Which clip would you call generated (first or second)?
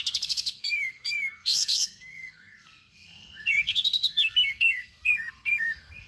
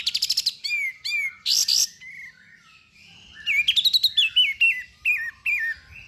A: first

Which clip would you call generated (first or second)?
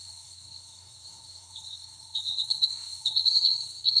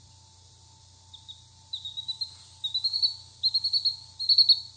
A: first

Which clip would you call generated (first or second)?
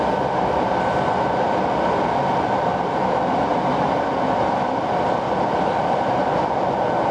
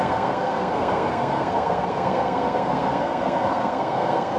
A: second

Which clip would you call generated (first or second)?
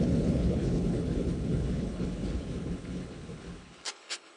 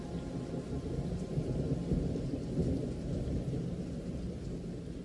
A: first